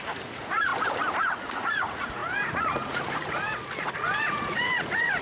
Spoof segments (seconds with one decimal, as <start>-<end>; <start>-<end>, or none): 0.0-0.7; 1.2-5.2